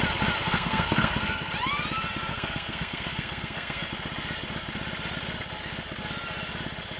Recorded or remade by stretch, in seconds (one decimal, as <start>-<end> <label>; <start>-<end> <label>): 0.0-0.4 recorded; 0.4-1.5 remade; 1.5-2.3 recorded; 2.3-3.9 remade; 3.9-7.0 recorded